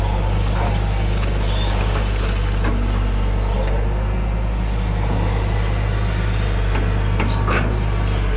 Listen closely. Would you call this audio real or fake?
real